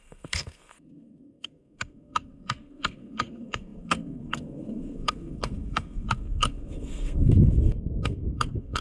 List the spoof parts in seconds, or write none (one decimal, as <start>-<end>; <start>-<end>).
0.0-8.8